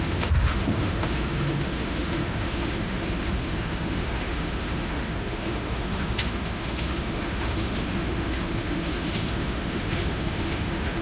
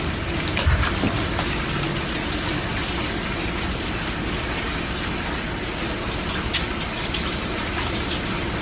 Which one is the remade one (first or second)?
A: first